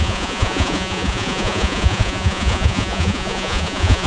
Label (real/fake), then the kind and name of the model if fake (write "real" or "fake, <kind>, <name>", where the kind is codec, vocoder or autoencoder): fake, vocoder, Vocos